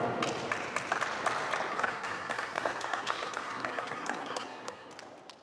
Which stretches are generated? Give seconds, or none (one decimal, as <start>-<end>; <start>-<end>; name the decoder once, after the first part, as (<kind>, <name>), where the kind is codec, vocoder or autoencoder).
1.7-4.9 (codec, SNAC)